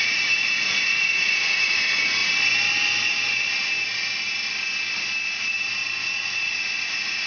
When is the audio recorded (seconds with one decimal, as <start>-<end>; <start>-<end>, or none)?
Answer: 2.2-6.1